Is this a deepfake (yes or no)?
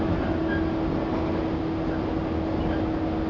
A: no